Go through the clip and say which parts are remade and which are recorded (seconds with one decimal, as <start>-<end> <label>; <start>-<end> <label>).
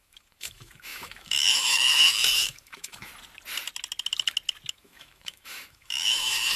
0.0-3.1 remade; 3.1-4.7 recorded; 4.7-6.6 remade